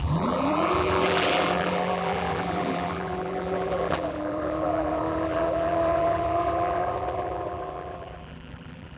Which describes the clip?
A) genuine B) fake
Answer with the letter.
B